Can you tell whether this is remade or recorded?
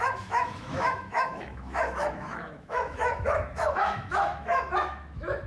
remade